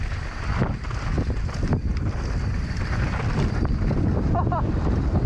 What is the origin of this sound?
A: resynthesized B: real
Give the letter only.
A